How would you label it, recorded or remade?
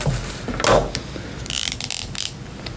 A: recorded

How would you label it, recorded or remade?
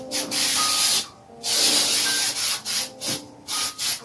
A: recorded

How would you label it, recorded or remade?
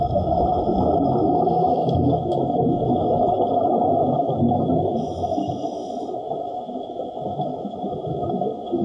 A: remade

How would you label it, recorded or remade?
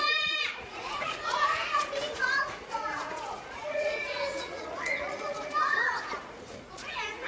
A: remade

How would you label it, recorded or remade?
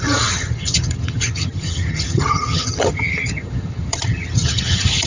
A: remade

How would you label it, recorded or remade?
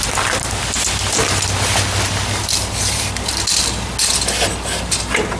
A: recorded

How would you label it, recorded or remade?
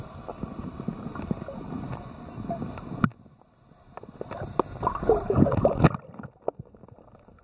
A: recorded